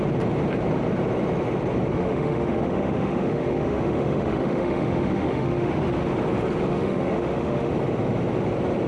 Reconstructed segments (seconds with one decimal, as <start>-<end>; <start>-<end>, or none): 1.9-6.1; 6.7-7.7